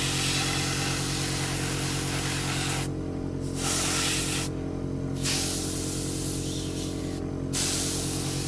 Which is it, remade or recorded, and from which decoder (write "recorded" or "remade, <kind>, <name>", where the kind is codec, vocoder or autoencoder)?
recorded